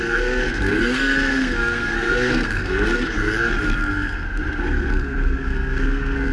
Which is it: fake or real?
fake